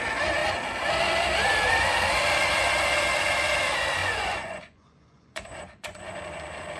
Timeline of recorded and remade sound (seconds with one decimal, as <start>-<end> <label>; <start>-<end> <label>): 0.0-4.0 recorded; 4.0-6.1 remade; 6.1-6.8 recorded